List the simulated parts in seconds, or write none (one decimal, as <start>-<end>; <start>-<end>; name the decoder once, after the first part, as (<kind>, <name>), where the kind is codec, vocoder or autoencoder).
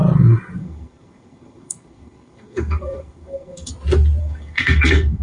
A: 0.6-3.7 (codec, SNAC); 4.2-5.2